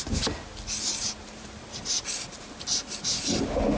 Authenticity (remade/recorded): recorded